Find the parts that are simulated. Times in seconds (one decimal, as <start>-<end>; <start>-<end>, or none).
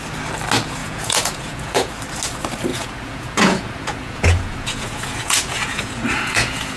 0.8-1.9; 2.7-6.8